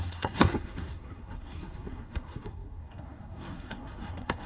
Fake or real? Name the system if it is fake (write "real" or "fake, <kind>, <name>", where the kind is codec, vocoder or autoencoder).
fake, codec, SNAC